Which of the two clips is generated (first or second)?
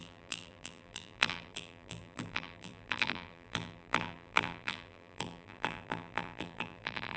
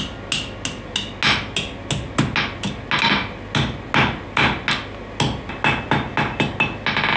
first